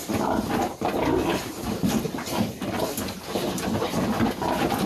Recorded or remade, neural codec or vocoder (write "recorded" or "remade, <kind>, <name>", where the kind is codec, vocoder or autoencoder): recorded